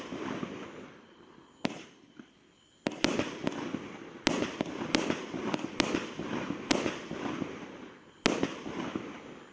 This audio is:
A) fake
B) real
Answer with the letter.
B